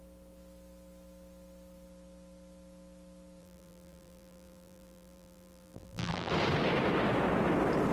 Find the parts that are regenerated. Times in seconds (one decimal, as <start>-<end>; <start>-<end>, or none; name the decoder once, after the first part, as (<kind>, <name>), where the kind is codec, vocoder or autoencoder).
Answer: 3.4-6.3 (vocoder, BigVGAN v2)